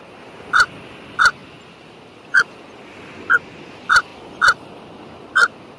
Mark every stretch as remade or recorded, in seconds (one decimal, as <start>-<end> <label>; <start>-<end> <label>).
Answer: 0.0-5.8 recorded